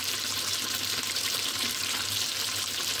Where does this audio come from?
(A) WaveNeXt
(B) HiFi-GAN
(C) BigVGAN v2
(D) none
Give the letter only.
C